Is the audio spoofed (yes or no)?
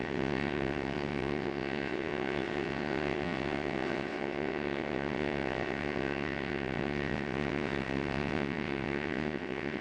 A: yes